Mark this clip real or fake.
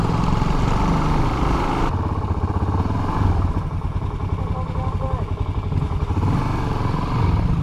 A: real